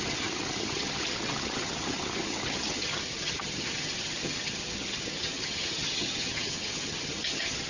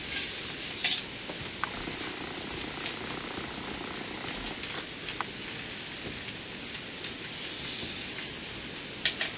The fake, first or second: first